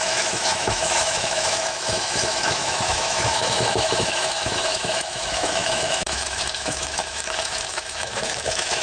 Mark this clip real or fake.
fake